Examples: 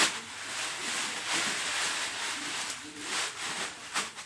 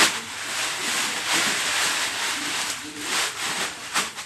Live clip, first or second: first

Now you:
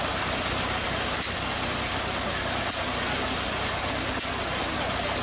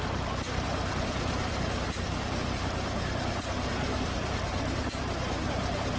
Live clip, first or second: first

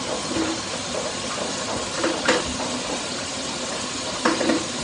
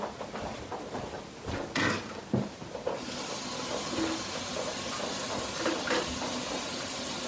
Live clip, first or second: second